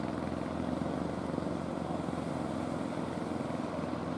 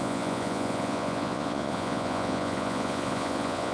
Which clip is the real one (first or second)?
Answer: first